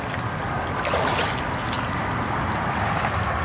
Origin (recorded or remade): recorded